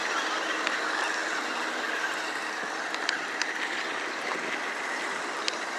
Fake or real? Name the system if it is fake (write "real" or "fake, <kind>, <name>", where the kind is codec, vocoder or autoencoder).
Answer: real